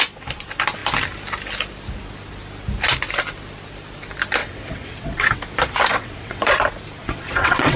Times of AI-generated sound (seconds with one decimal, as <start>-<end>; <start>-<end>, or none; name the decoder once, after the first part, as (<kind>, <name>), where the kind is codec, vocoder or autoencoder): 4.4-5.4 (vocoder, WaveNeXt); 5.9-6.5; 7.0-7.8